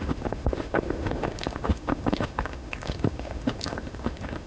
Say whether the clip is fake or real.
fake